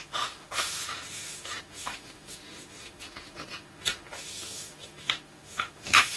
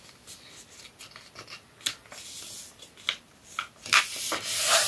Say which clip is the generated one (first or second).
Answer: first